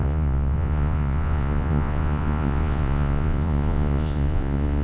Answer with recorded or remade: remade